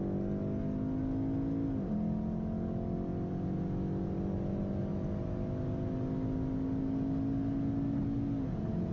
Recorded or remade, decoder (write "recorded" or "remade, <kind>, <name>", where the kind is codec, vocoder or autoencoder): recorded